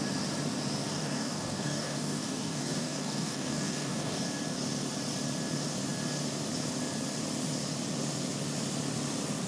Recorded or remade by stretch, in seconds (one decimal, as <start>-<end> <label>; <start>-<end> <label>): 0.0-0.9 recorded; 0.9-4.2 remade; 4.2-9.5 recorded